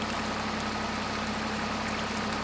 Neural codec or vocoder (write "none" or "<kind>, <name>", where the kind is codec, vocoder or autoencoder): none